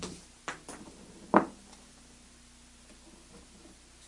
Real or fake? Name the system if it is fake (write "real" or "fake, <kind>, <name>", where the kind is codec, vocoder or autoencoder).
real